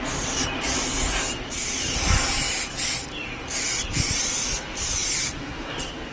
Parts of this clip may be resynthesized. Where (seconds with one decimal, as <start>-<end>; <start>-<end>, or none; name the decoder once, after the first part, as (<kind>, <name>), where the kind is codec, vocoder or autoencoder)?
0.0-0.9 (vocoder, BigVGAN v2); 4.4-6.1